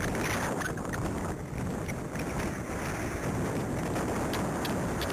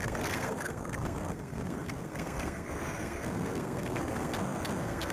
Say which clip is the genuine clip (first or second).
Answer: first